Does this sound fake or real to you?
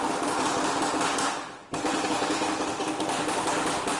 real